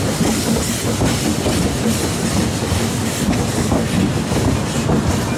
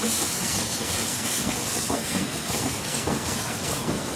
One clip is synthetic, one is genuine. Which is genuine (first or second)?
first